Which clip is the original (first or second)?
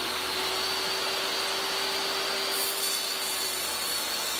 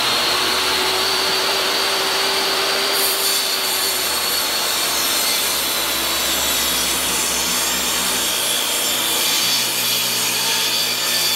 first